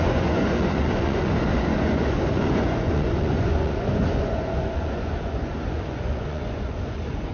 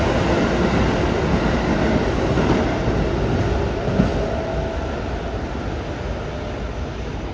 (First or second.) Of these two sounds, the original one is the second